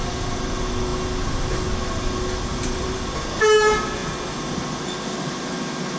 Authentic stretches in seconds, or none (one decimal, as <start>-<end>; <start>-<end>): 0.0-2.5; 3.0-6.0